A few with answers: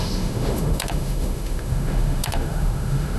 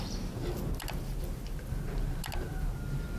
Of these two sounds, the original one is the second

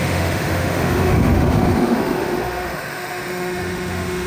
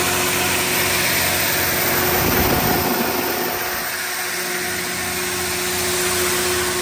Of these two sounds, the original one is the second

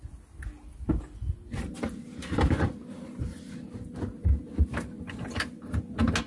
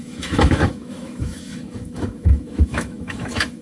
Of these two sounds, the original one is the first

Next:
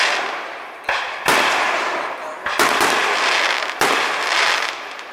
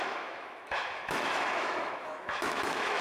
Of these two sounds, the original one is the first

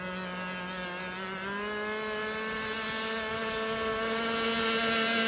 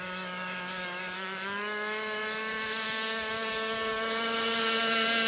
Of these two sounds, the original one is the first